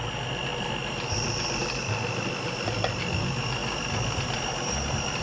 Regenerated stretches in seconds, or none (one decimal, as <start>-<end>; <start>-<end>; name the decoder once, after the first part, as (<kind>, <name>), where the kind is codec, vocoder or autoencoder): none